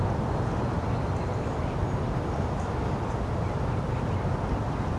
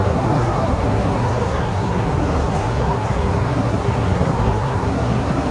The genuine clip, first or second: first